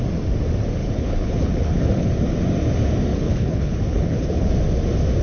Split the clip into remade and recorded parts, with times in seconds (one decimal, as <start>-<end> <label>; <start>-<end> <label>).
0.0-0.8 recorded; 0.8-2.1 remade; 2.1-3.1 recorded; 3.1-4.5 remade; 4.5-5.2 recorded